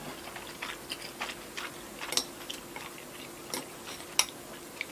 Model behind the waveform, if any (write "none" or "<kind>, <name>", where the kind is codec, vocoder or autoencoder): none